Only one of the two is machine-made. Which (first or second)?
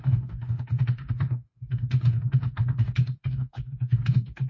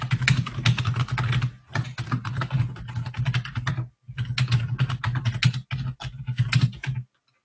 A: first